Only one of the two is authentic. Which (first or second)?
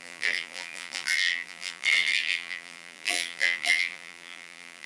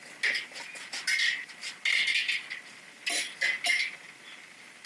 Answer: second